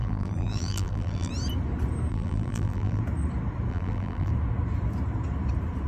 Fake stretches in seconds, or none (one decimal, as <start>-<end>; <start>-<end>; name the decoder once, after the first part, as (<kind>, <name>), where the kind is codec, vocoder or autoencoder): 0.0-1.3 (vocoder, BigVGAN v2); 2.1-3.0; 3.7-4.3